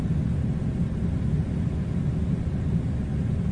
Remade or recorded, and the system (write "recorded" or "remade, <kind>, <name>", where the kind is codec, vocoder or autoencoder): recorded